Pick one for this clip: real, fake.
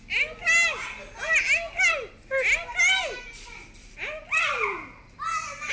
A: real